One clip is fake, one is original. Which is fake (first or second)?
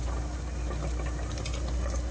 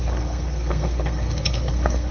second